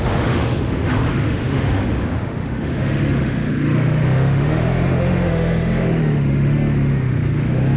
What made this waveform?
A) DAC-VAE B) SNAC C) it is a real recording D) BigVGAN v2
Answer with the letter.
A